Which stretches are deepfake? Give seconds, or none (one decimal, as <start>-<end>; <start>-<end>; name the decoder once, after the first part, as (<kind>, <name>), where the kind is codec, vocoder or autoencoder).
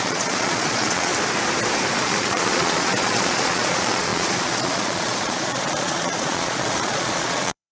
0.0-1.1 (vocoder, Vocos); 2.0-7.7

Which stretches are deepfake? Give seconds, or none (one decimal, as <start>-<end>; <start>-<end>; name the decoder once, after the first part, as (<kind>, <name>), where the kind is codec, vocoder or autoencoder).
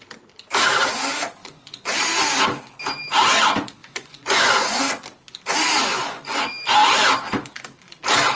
1.4-2.0 (vocoder, Vocos); 3.8-4.8; 5.9-6.5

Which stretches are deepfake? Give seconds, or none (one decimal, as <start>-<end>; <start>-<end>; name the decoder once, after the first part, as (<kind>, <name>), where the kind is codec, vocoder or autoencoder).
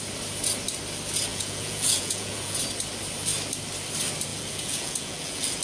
1.3-2.6 (vocoder, Vocos); 4.3-5.6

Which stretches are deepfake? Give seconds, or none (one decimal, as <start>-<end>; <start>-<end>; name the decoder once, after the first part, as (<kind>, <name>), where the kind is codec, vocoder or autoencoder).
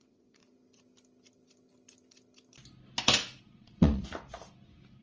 0.0-0.4 (vocoder, Vocos); 3.4-4.0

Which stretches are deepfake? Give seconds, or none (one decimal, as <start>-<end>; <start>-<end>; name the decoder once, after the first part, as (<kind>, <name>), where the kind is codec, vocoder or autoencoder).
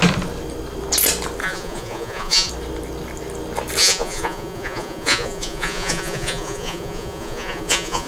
1.4-2.5 (vocoder, Vocos); 3.8-8.1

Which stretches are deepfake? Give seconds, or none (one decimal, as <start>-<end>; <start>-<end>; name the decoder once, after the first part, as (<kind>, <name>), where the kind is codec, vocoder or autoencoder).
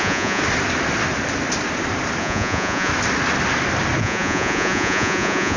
0.0-0.4 (vocoder, Vocos); 2.2-2.9; 4.0-5.6